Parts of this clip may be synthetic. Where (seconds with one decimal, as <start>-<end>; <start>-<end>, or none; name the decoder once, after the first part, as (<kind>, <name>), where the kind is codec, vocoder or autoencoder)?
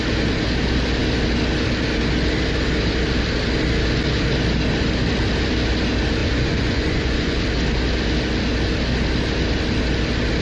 6.2-7.4 (vocoder, Vocos)